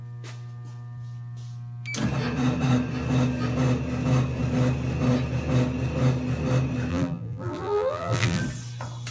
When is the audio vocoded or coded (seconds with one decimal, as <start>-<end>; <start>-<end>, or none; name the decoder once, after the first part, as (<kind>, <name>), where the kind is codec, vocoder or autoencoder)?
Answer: 6.9-8.4 (vocoder, BigVGAN v2)

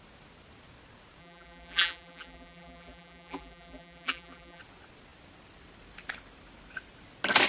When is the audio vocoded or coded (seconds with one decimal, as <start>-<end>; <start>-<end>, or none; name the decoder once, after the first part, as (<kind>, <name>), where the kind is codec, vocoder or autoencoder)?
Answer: 1.2-4.6 (vocoder, BigVGAN v2)

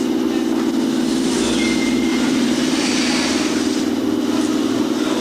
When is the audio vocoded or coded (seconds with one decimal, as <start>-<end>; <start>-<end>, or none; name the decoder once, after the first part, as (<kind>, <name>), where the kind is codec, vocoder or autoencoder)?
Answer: 1.1-1.6 (vocoder, BigVGAN v2); 2.1-5.2

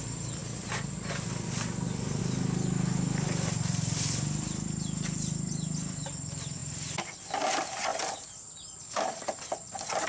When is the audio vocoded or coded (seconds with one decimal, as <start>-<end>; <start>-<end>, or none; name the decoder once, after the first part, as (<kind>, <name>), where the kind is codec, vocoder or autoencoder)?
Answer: none